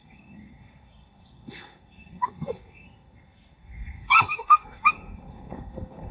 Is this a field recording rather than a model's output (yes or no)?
no